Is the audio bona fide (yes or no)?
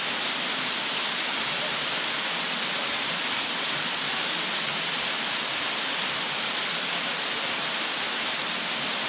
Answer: yes